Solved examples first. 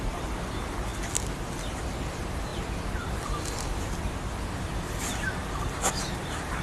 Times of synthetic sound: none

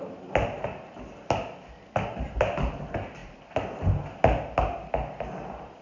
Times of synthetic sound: none

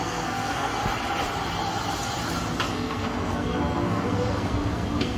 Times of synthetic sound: 0.0-0.7 (codec, SNAC); 2.7-5.2

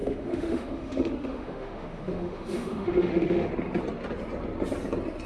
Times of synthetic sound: 0.0-3.5 (autoencoder, DAC-VAE)

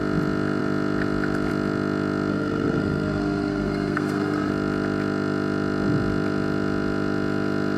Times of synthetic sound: 2.3-4.5 (codec, SNAC)

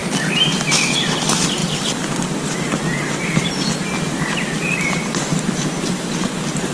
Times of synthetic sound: 5.3-6.1 (vocoder, BigVGAN v2)

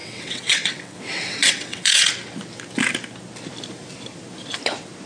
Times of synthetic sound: 0.0-2.1 (vocoder, WaveNeXt)

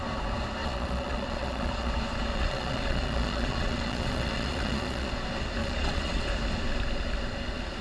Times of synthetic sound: 0.6-1.9 (vocoder, Vocos); 2.3-5.1; 5.6-6.2